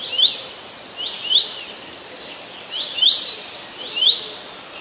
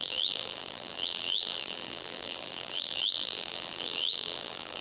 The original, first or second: first